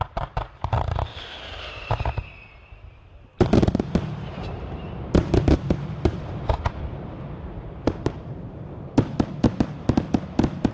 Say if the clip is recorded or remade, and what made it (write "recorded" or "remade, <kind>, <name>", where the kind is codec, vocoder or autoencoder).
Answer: remade, vocoder, BigVGAN v2